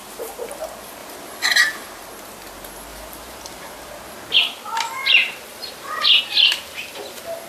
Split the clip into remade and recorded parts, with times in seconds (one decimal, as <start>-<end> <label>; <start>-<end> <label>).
0.0-2.9 recorded; 2.9-3.9 remade; 3.9-5.0 recorded; 5.0-6.2 remade; 6.2-7.5 recorded